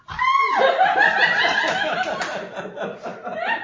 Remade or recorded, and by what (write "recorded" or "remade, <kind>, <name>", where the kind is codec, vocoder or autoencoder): recorded